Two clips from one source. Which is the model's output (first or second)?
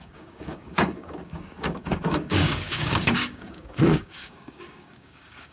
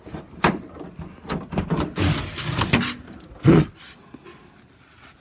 first